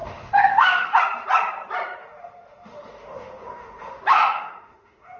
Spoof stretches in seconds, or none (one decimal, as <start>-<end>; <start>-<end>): 0.0-1.0; 2.0-5.2